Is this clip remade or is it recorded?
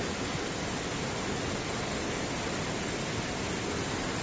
recorded